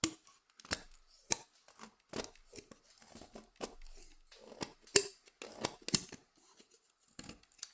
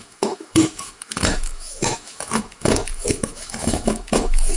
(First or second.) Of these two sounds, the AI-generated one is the second